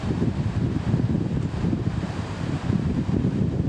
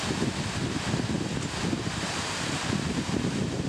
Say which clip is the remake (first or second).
first